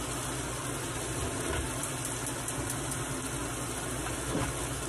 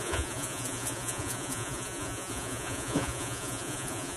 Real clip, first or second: first